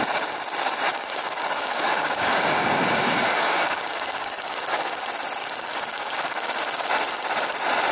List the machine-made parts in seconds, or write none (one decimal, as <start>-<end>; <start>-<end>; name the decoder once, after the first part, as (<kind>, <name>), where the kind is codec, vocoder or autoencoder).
0.9-5.0 (codec, DAC); 5.4-6.9